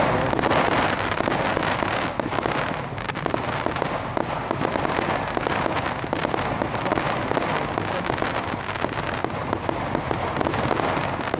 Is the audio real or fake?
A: real